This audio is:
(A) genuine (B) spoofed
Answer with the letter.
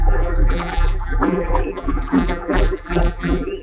B